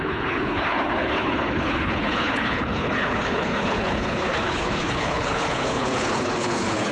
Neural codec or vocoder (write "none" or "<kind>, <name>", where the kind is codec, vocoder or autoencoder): codec, HILCodec